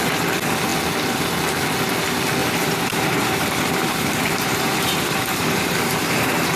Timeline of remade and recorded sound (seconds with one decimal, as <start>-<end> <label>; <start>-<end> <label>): 0.0-2.4 recorded; 2.4-6.6 remade